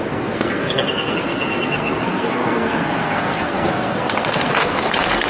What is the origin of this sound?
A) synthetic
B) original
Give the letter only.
A